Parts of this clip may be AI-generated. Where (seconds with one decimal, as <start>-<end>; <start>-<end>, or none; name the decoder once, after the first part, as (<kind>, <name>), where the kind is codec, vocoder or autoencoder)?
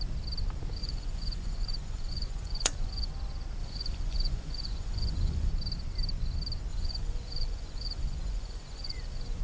0.8-3.1 (vocoder, Vocos); 3.6-5.5; 6.7-9.4